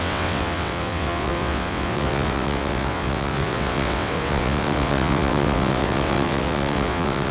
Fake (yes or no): yes